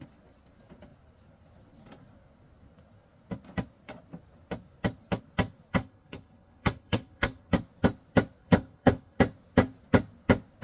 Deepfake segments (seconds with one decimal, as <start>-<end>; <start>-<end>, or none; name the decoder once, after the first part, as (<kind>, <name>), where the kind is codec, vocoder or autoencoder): 5.7-7.5 (codec, HILCodec); 8.4-9.2